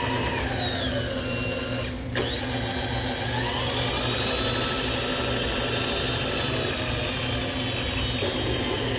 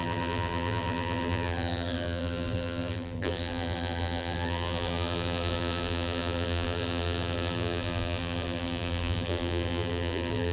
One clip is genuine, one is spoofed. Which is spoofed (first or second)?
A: second